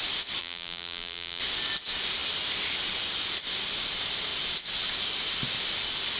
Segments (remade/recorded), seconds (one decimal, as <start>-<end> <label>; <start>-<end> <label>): 0.0-0.4 recorded; 0.4-1.4 remade; 1.4-6.2 recorded